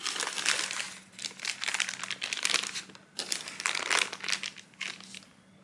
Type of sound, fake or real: real